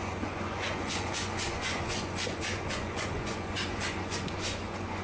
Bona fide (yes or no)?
no